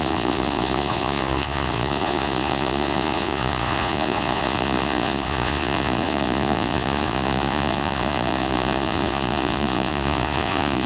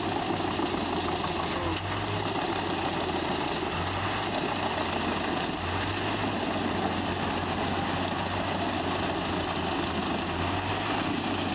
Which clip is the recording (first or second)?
second